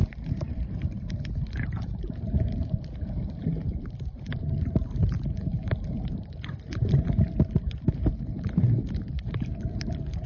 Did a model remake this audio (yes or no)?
yes